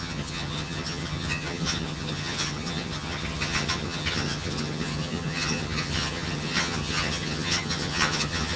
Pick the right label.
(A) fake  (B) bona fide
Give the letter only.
A